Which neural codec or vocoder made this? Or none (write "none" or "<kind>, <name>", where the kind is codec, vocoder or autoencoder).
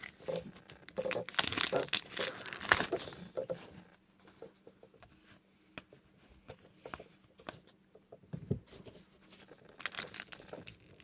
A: none